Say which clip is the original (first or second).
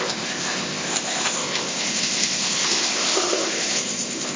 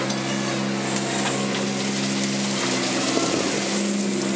second